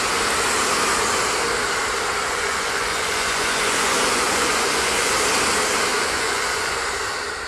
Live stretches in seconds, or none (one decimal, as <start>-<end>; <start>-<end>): 0.0-2.2; 5.1-5.9; 6.9-7.5